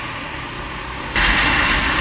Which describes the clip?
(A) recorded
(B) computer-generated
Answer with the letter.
A